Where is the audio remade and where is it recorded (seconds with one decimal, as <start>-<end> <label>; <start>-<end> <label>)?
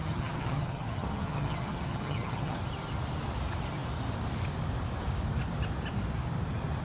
0.0-2.6 remade; 2.6-6.8 recorded